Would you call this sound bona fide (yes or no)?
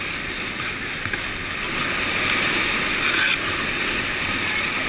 yes